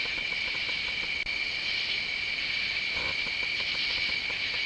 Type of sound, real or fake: real